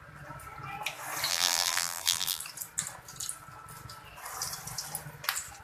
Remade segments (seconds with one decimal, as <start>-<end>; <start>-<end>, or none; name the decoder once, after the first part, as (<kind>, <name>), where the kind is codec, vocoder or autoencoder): 1.3-2.4 (vocoder, BigVGAN v2)